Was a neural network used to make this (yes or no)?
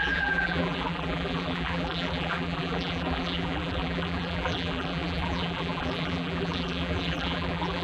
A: yes